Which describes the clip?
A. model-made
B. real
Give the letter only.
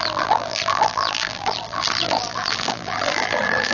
A